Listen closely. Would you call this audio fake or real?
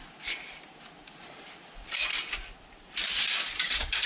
real